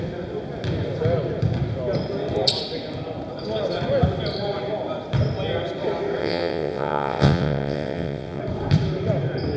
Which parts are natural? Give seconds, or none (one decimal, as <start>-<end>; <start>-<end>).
0.0-6.2; 8.4-9.6